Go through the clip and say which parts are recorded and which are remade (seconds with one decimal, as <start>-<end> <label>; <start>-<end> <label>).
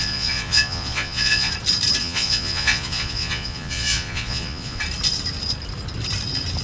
0.0-1.5 remade; 1.5-2.0 recorded; 2.0-4.8 remade; 4.8-6.6 recorded